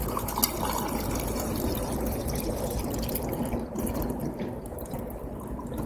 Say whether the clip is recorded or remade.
remade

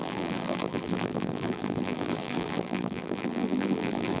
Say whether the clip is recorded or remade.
remade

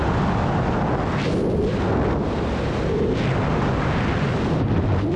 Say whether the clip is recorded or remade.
recorded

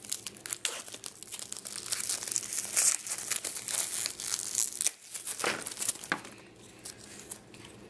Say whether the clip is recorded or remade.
recorded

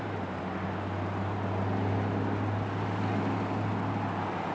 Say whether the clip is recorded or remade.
recorded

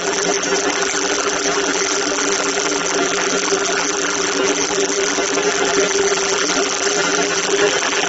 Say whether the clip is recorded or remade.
remade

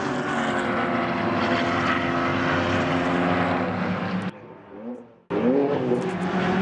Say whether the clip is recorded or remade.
recorded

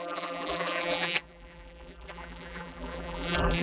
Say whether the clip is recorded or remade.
remade